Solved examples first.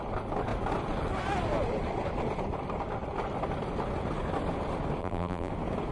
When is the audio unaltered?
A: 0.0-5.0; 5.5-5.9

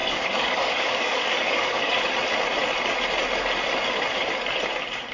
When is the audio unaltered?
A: 2.0-5.1

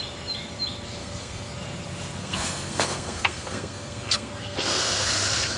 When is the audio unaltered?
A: 0.0-1.0; 1.5-2.2

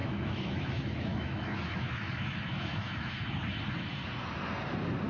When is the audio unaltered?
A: 3.1-5.1

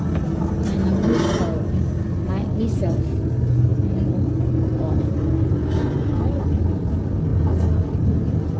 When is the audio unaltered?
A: 0.0-8.6

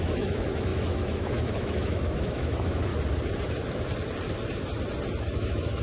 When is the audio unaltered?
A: 2.9-5.2